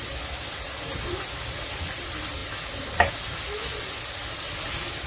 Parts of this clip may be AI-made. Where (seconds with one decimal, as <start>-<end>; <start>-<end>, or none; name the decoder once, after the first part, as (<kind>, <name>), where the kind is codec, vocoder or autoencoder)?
none